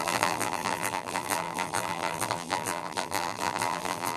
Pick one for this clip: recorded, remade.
remade